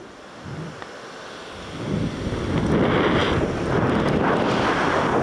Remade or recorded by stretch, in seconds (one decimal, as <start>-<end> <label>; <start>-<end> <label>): 0.0-5.2 recorded